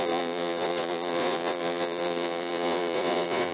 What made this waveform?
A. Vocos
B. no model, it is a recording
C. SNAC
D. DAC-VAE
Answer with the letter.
A